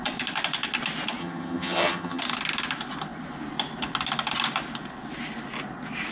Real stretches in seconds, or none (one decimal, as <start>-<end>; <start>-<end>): 0.0-1.2; 2.2-6.1